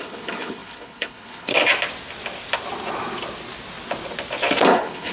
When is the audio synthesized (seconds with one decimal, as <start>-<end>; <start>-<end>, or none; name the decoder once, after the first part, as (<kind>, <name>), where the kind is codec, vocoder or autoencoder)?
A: 0.0-1.5 (codec, HILCodec); 4.6-5.1